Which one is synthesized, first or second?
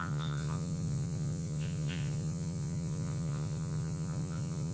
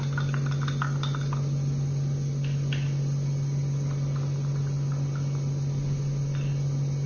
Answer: first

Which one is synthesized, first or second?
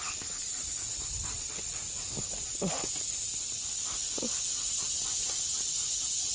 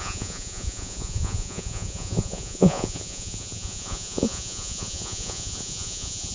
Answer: second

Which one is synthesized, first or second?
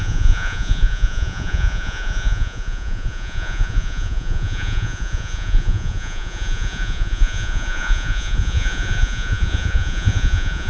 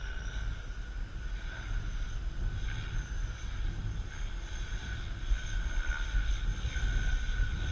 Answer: first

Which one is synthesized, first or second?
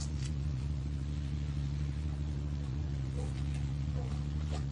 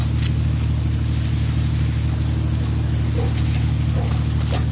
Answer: first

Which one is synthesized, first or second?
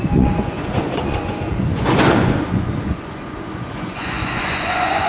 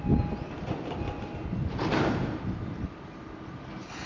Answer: first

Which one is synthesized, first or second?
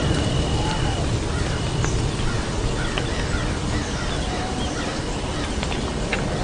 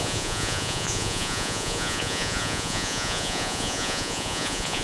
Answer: second